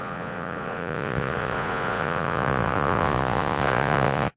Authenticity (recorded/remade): remade